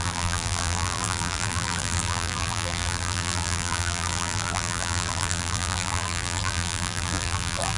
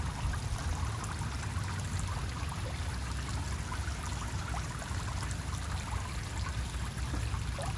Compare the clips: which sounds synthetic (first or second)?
first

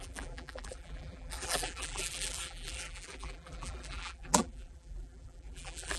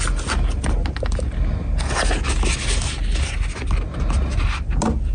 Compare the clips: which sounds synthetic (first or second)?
first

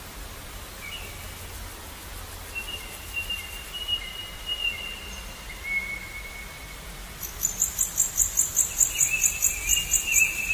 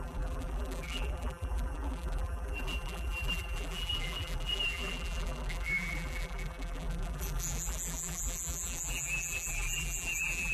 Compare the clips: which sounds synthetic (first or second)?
second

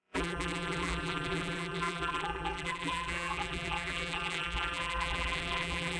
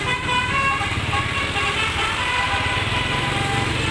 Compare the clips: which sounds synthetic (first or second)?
first